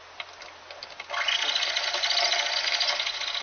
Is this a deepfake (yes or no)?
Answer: no